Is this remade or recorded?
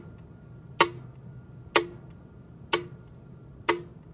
recorded